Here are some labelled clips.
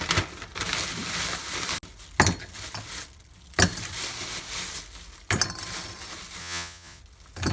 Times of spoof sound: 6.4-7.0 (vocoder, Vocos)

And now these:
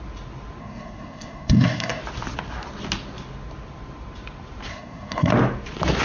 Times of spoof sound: 0.6-2.0 (codec, SNAC); 4.7-5.3

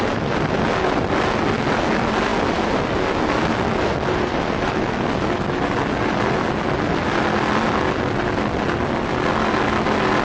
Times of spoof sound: none

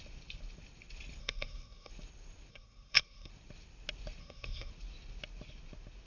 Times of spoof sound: 1.2-1.9 (codec, SNAC); 2.5-3.3; 4.2-4.7

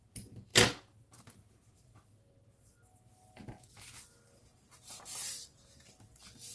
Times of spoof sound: 0.0-3.1 (vocoder, BigVGAN v2)

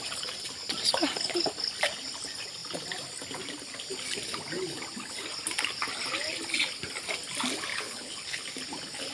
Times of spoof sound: 7.7-8.4 (codec, HILCodec)